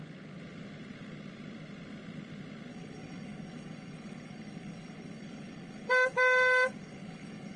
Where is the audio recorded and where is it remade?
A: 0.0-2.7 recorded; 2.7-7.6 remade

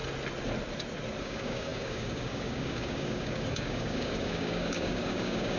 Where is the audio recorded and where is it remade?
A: 0.0-1.2 recorded; 1.2-5.6 remade

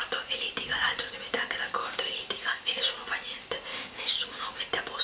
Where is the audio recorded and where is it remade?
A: 0.0-1.8 recorded; 1.8-2.8 remade; 2.8-3.7 recorded; 3.7-4.6 remade; 4.6-5.0 recorded

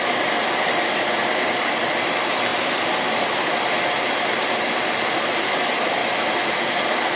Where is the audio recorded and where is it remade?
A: 0.0-7.2 recorded

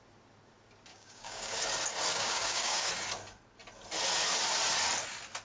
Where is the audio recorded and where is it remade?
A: 0.0-0.9 recorded; 0.9-1.6 remade; 1.6-2.1 recorded; 2.1-2.9 remade; 2.9-5.4 recorded

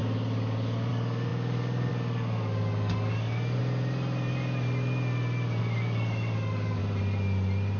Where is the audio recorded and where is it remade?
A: 0.0-3.6 remade; 3.6-5.6 recorded; 5.6-6.8 remade; 6.8-7.8 recorded